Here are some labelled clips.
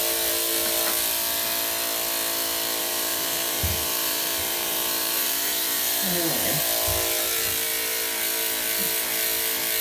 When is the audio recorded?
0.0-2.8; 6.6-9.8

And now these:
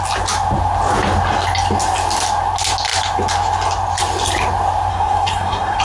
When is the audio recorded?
0.0-4.9

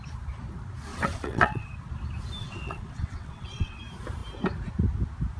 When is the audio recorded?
0.0-0.9; 1.7-2.4; 3.8-5.4

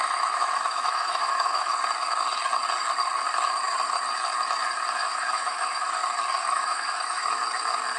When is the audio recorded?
1.7-4.9; 6.0-6.5; 7.4-8.0

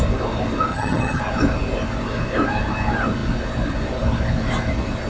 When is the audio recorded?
0.0-0.7; 1.2-5.1